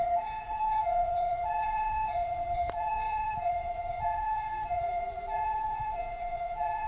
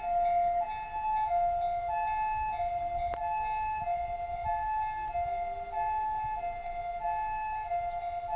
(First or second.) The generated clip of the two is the first